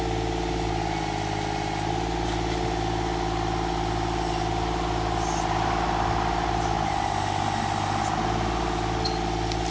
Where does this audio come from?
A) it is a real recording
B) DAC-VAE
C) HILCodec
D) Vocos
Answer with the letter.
A